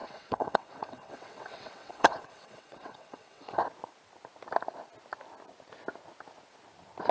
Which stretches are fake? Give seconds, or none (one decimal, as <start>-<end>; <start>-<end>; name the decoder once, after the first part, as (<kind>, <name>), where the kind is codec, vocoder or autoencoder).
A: 0.0-3.6 (vocoder, WaveNeXt)

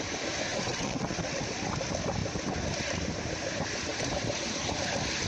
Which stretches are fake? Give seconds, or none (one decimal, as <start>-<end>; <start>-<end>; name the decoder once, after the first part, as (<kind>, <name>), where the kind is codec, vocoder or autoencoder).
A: 0.5-1.4 (vocoder, WaveNeXt)

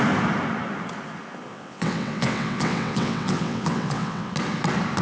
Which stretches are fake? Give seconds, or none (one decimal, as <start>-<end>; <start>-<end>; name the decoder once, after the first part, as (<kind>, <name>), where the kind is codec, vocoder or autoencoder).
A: 1.5-4.3 (vocoder, WaveNeXt)

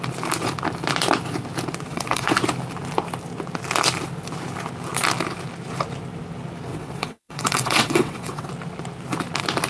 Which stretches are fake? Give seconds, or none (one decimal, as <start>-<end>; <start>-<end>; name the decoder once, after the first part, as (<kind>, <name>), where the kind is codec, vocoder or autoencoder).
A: 1.9-2.4 (vocoder, WaveNeXt); 6.7-8.5